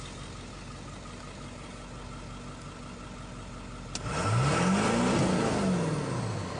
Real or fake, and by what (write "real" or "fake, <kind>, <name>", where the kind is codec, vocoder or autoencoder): real